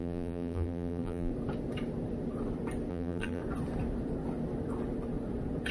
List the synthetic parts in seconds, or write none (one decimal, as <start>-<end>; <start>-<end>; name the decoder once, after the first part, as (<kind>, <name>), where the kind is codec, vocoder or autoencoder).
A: 0.0-1.3 (vocoder, BigVGAN v2); 2.9-3.4